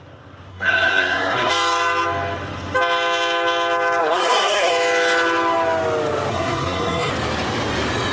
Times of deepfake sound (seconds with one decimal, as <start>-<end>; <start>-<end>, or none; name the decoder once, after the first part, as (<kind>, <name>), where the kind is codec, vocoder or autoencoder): 0.5-1.5 (codec, SNAC); 4.0-4.7; 6.3-7.1